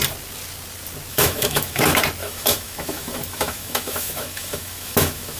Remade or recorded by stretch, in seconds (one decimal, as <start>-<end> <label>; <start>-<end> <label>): 0.0-1.1 recorded; 1.1-1.8 remade; 1.8-2.2 recorded; 2.2-5.4 remade